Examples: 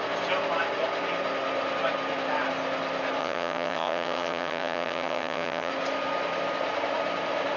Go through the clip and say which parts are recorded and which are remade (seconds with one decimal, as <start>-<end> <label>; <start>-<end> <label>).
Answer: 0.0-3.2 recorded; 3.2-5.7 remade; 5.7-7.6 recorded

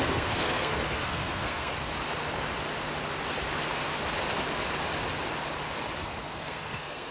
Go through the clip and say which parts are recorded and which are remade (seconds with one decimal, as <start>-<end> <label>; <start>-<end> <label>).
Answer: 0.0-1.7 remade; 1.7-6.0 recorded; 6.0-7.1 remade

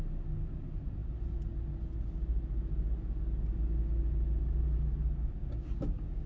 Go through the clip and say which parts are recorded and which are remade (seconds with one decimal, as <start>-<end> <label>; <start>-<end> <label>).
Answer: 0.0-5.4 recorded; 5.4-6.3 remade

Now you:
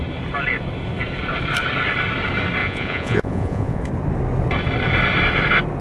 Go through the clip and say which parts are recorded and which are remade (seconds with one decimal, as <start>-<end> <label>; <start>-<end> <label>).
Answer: 0.0-2.6 recorded; 2.6-3.8 remade; 3.8-5.8 recorded